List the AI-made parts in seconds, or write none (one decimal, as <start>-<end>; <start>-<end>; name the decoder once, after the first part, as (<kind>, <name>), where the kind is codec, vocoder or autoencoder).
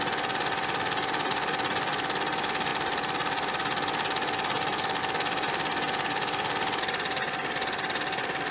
none